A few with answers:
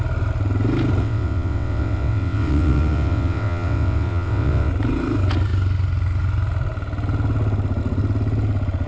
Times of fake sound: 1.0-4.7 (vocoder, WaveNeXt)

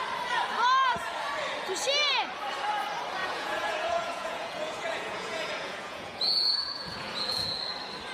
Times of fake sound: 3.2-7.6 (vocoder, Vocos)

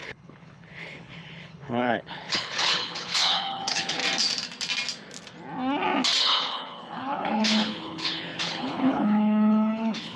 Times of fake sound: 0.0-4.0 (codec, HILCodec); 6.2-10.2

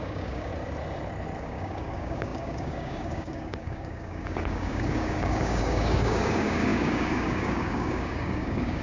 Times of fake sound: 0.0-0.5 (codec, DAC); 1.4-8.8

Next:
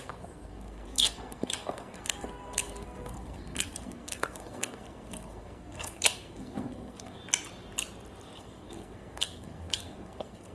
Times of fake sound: 0.0-7.2 (codec, SNAC); 8.4-10.5

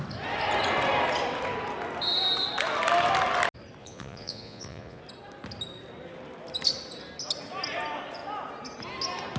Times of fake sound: 3.8-5.0 (vocoder, Vocos)